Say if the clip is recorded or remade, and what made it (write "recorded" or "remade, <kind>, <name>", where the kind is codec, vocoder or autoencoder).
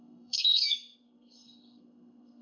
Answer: remade, codec, SNAC